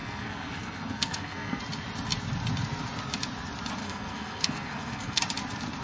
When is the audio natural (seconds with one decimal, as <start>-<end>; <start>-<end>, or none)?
1.6-3.8; 5.2-5.8